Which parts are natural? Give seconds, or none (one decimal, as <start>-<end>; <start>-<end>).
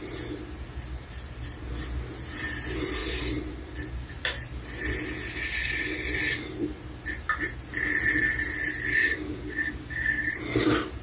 0.0-8.9; 10.3-11.0